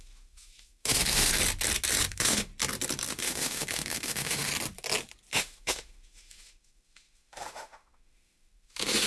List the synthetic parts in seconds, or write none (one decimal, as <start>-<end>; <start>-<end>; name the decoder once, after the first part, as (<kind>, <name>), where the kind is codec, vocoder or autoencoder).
0.0-1.3 (autoencoder, DAC-VAE); 2.1-2.5; 3.1-4.5; 5.3-9.1